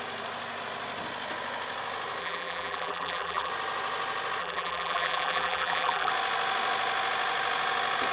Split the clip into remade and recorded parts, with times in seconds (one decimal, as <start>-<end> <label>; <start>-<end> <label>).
0.0-2.2 recorded; 2.2-3.5 remade; 3.5-4.4 recorded; 4.4-6.1 remade; 6.1-8.1 recorded